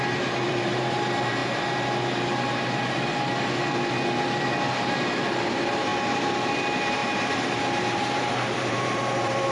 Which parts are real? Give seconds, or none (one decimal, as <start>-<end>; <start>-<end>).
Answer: 1.4-5.5